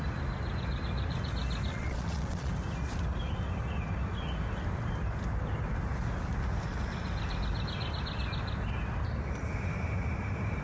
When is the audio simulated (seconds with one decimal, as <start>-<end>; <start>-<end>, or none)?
1.7-2.5